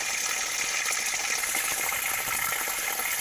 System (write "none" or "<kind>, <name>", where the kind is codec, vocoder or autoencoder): none